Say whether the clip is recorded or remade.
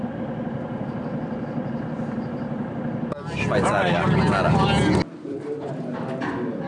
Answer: recorded